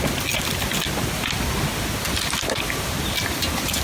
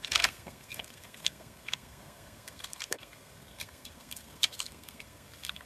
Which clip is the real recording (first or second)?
first